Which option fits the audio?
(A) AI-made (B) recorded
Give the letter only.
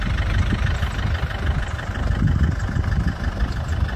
B